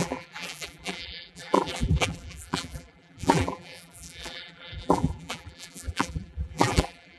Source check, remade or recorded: remade